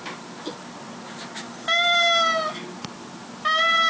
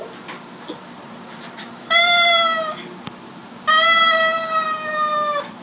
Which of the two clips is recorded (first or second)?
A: first